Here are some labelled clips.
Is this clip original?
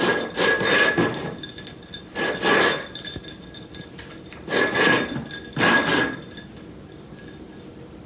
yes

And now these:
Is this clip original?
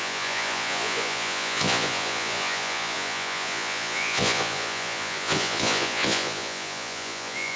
no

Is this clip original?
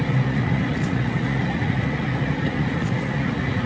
no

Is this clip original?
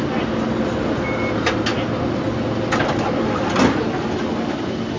yes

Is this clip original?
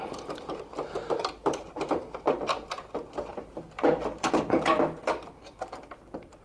no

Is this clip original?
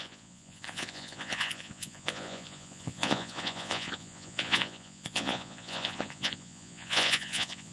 no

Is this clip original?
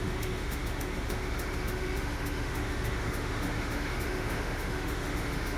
no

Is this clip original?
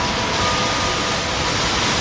yes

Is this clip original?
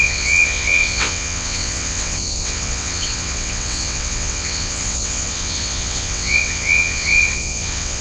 no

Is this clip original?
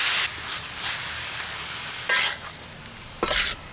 yes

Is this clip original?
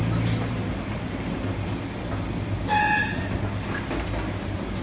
yes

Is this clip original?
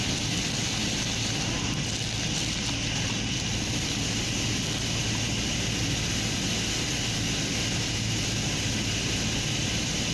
yes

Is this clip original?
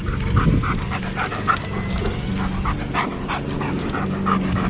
yes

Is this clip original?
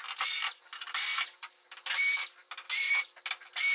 yes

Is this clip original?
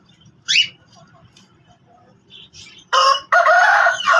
no